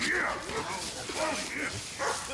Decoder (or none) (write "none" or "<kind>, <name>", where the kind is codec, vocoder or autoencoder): none